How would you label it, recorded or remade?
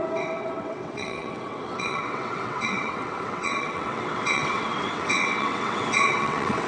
remade